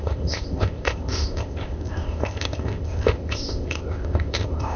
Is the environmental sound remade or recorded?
remade